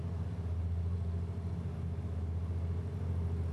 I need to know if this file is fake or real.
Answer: real